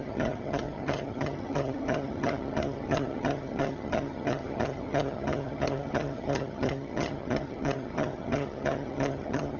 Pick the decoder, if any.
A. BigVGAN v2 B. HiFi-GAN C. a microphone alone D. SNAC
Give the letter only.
B